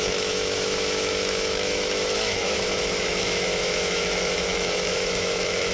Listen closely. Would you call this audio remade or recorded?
remade